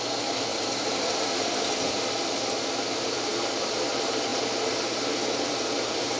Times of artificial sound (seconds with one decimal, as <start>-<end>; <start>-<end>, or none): 0.0-4.3; 5.4-6.2